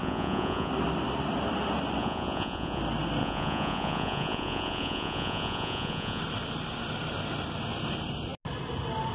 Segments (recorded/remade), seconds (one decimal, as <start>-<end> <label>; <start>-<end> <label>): 0.0-0.7 remade; 0.7-2.0 recorded; 2.0-2.8 remade; 2.8-3.2 recorded; 3.2-6.2 remade; 6.2-9.1 recorded